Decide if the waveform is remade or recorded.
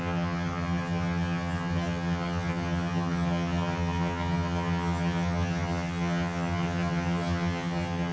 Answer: remade